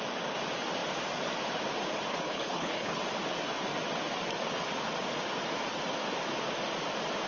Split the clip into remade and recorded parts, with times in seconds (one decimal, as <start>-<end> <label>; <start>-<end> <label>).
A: 0.0-2.1 recorded; 2.1-3.0 remade; 3.0-7.3 recorded

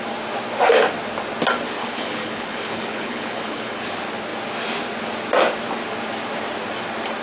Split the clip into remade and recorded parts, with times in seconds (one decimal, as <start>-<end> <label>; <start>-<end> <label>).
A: 0.0-1.8 recorded; 1.8-3.8 remade; 3.8-7.2 recorded